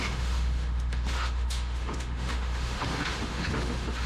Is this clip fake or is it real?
fake